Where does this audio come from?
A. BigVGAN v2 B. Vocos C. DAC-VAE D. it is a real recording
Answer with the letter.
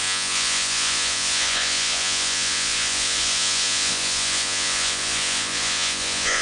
B